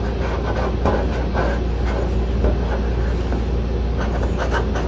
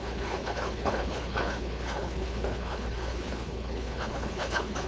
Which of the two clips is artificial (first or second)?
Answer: second